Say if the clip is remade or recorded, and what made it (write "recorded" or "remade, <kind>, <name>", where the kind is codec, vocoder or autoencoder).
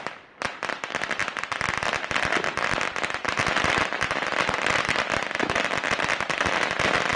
recorded